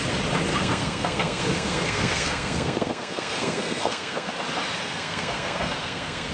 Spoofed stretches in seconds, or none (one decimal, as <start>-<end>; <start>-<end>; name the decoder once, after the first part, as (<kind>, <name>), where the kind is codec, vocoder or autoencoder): 0.5-4.3 (codec, SNAC); 4.8-6.3